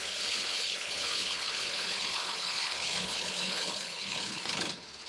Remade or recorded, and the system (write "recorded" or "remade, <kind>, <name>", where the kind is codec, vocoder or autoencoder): remade, codec, HILCodec